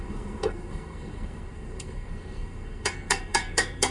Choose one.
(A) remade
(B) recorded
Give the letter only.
A